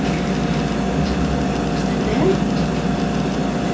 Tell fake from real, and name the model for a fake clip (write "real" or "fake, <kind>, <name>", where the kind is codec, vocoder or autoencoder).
real